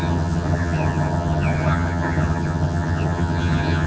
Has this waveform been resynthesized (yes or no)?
yes